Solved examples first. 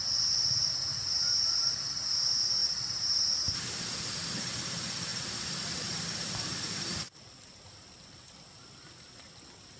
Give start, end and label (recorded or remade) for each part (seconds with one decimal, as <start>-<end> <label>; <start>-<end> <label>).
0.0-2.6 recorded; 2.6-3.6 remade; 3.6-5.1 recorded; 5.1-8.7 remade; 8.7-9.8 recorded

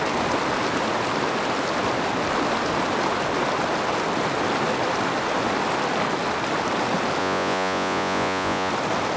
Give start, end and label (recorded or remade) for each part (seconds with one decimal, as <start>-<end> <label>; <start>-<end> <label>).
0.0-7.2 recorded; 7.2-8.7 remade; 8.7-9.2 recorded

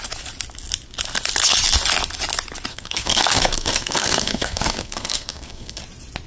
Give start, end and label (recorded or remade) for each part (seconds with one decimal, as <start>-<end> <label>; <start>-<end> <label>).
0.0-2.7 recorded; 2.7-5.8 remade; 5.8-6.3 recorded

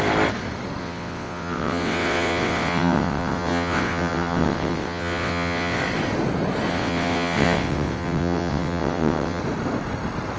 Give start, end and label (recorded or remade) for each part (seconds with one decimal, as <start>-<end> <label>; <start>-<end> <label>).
0.0-0.8 recorded; 0.8-5.8 remade; 5.8-6.7 recorded; 6.7-9.4 remade; 9.4-10.4 recorded